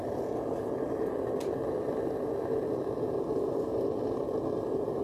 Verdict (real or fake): real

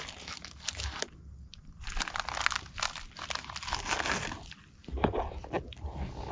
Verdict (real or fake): real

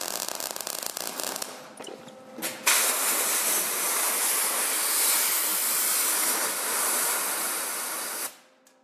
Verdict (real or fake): real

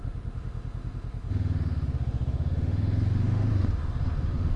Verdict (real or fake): fake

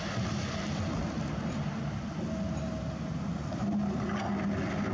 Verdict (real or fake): real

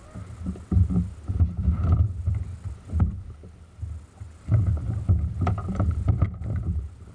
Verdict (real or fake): real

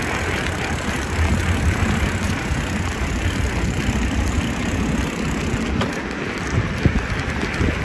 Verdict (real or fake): real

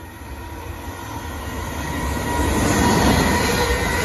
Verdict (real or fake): real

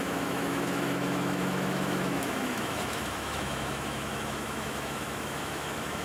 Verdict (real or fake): fake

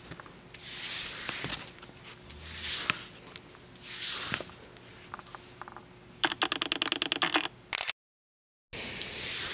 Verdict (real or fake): real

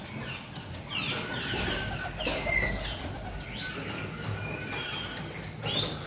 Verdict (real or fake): real